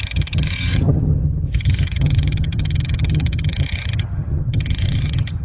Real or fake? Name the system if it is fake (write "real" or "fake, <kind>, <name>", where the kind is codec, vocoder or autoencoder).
fake, vocoder, HiFi-GAN